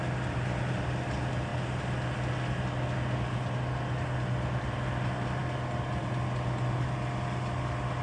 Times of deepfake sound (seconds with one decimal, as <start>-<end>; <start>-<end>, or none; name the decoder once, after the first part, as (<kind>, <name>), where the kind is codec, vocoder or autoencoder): none